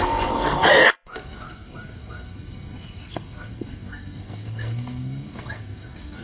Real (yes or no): no